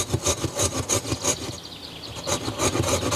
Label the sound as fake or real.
real